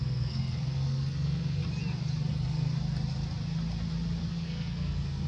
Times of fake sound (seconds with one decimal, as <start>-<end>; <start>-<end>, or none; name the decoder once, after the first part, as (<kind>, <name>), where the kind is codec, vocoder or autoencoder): 0.0-1.6 (codec, SNAC); 2.3-2.7; 4.3-5.3